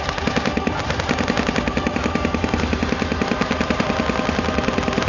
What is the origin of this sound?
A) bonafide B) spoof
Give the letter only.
A